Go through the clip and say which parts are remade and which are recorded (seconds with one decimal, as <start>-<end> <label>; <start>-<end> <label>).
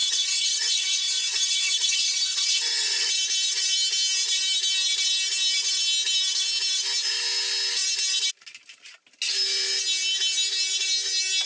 0.0-3.1 remade; 3.1-11.5 recorded